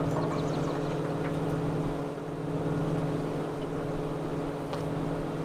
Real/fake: real